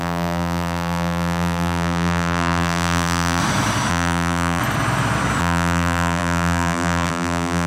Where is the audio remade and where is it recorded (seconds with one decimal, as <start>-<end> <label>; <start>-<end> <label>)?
0.0-3.4 remade; 3.4-3.9 recorded; 3.9-4.6 remade; 4.6-5.4 recorded; 5.4-7.7 remade